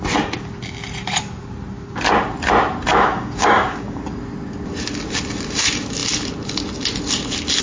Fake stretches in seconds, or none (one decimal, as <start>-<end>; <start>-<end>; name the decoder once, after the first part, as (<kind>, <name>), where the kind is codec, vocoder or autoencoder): 2.9-4.0 (codec, DAC)